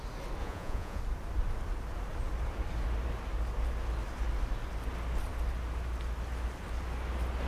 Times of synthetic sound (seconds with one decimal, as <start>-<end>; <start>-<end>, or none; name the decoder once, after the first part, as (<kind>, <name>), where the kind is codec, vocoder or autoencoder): 0.4-1.0 (vocoder, Vocos)